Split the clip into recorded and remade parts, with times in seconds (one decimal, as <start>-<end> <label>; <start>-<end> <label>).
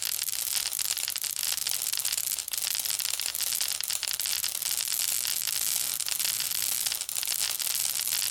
0.0-8.3 recorded